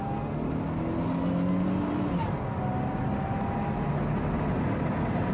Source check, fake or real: real